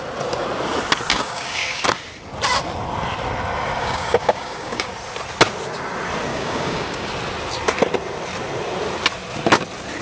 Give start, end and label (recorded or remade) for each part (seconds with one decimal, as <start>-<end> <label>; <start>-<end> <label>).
0.0-1.1 recorded; 1.1-1.8 remade; 1.8-3.8 recorded; 3.8-4.9 remade; 4.9-6.3 recorded; 6.3-7.1 remade; 7.1-10.0 recorded